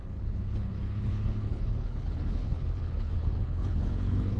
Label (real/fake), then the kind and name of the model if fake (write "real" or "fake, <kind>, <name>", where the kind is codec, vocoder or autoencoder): fake, codec, HILCodec